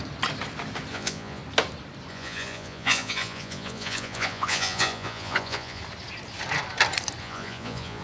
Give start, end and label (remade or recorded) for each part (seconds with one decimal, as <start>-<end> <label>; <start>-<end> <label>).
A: 0.0-0.9 recorded; 0.9-1.4 remade; 1.4-2.1 recorded; 2.1-5.8 remade; 5.8-7.2 recorded; 7.2-8.0 remade